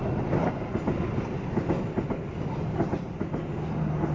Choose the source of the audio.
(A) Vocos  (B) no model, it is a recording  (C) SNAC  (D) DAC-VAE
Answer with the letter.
B